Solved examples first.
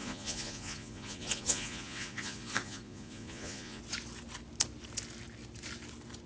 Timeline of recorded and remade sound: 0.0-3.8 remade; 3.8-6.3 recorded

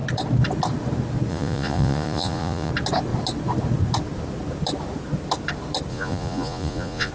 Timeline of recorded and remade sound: 0.0-1.3 recorded; 1.3-2.7 remade; 2.7-5.9 recorded; 5.9-7.1 remade

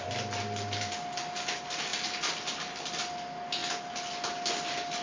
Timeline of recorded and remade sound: 0.0-5.0 recorded

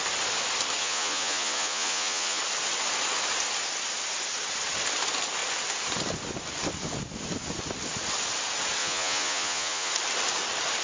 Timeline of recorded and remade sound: 0.0-0.8 recorded; 0.8-2.4 remade; 2.4-8.8 recorded; 8.8-9.9 remade; 9.9-10.8 recorded